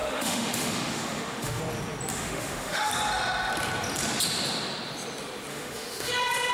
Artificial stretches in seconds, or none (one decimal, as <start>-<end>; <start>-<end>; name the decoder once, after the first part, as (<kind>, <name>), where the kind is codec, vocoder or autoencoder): 0.0-1.6 (autoencoder, DAC-VAE); 2.1-2.9; 5.5-6.1